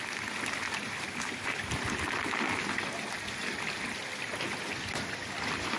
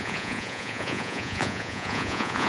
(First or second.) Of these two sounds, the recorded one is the first